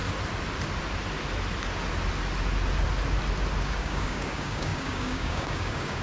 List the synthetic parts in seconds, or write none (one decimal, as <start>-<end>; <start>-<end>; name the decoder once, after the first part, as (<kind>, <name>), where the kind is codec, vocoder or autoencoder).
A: 3.6-6.0 (codec, DAC)

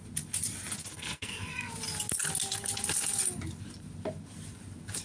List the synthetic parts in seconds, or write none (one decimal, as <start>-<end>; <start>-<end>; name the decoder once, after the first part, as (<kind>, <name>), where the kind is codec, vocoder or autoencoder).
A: 0.9-1.7 (codec, SNAC)

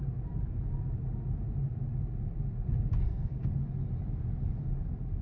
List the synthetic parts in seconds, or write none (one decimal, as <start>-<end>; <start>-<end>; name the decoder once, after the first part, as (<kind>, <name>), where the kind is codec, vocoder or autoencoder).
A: 2.9-3.5 (codec, SNAC)

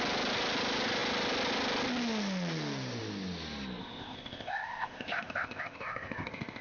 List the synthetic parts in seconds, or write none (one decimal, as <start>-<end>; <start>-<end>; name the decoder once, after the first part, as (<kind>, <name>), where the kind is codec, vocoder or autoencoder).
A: 3.8-6.6 (codec, ZipCodec)

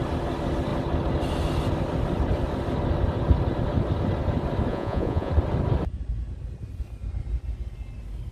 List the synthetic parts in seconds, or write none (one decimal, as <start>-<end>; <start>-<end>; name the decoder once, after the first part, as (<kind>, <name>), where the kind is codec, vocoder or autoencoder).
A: 4.7-5.3 (vocoder, Vocos)